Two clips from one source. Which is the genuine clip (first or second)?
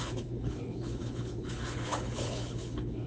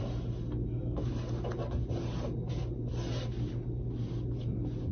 second